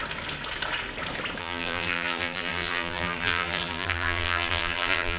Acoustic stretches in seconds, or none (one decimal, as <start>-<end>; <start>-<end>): 0.0-1.4